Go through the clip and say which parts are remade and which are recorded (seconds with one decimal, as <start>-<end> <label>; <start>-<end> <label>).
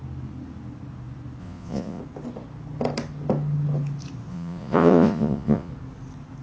0.0-1.4 recorded; 1.4-2.0 remade; 2.0-4.3 recorded; 4.3-5.7 remade; 5.7-6.4 recorded